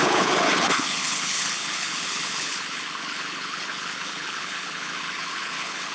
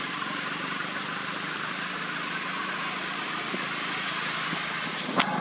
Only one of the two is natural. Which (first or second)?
second